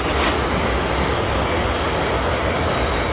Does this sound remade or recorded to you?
recorded